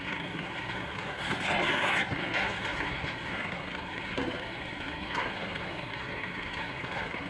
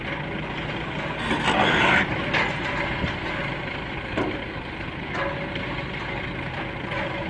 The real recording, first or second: second